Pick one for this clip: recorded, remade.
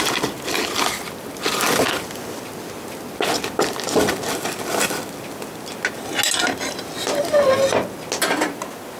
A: recorded